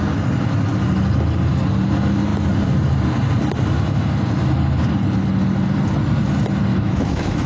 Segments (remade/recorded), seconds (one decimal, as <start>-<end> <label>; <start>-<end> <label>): 0.0-6.7 recorded; 6.7-7.5 remade